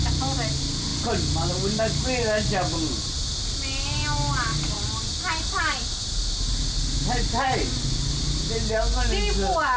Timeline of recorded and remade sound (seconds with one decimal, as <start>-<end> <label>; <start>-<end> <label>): 0.0-9.8 recorded